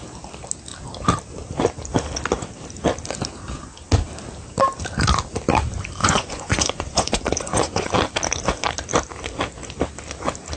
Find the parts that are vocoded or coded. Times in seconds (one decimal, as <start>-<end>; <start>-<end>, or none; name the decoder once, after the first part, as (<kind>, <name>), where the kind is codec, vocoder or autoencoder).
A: 6.0-7.9 (vocoder, Vocos)